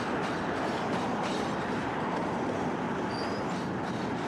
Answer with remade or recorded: recorded